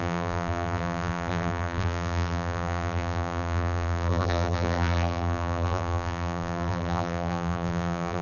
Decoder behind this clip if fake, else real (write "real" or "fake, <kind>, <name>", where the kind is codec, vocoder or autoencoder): fake, vocoder, BigVGAN v2